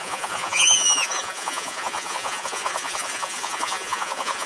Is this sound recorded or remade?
remade